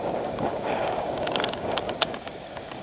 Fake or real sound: fake